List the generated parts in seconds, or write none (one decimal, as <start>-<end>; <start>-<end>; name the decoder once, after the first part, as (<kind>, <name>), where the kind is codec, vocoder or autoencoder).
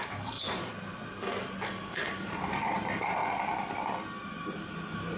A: 0.0-0.7 (vocoder, BigVGAN v2); 1.9-3.2; 4.4-5.2